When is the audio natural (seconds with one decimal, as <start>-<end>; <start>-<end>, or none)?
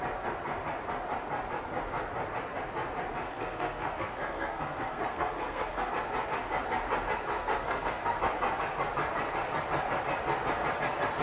0.0-3.3; 5.9-7.3; 8.2-11.2